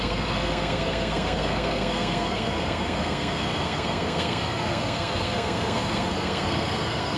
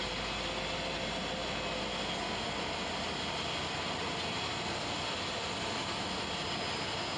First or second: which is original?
second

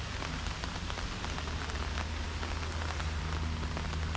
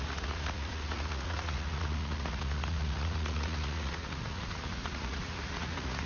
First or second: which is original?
first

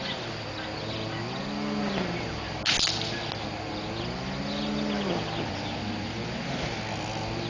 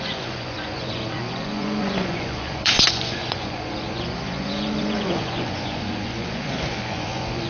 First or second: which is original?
first